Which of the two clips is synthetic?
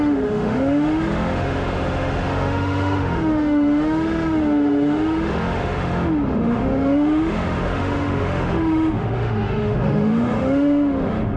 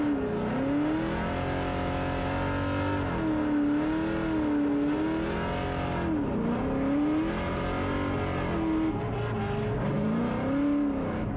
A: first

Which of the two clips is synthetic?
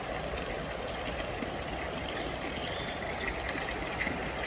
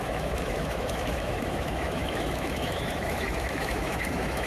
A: second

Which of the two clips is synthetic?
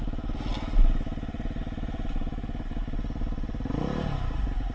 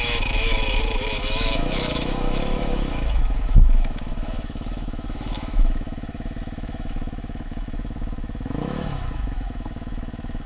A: second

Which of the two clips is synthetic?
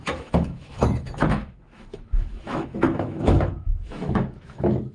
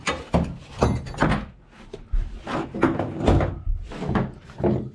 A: first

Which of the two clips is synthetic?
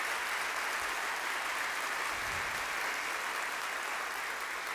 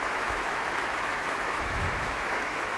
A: second